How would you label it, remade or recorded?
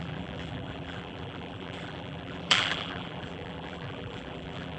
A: remade